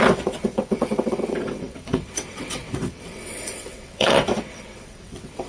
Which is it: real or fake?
fake